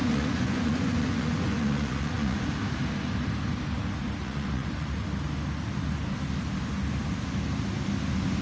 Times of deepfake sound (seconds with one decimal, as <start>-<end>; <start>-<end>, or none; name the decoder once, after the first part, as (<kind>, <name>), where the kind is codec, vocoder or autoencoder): 0.0-2.5 (vocoder, Vocos); 4.2-4.9